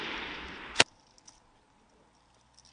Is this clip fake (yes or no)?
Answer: no